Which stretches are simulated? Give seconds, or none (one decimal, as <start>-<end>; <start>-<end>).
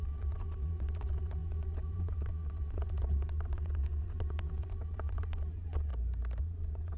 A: 0.0-5.9; 6.4-7.0